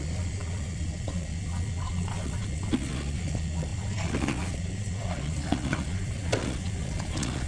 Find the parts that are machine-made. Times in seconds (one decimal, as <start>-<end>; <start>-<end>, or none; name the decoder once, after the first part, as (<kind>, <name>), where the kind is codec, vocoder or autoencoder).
0.0-7.5 (vocoder, Vocos)